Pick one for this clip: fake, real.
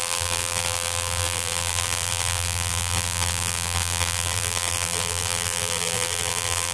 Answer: fake